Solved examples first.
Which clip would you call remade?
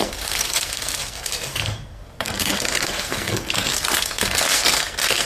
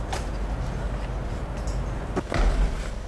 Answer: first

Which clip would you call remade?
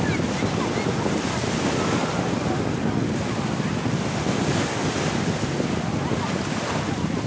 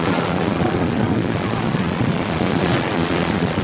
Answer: second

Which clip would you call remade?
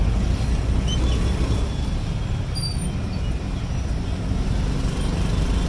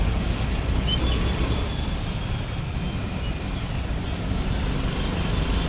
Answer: second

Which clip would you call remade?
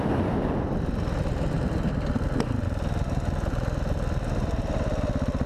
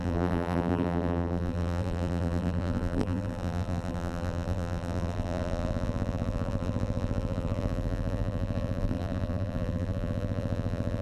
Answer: second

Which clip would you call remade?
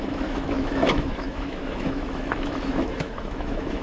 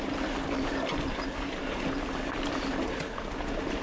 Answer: first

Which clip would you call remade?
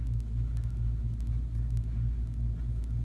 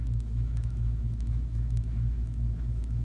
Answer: second